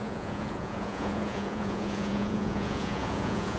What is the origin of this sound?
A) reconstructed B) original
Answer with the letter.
A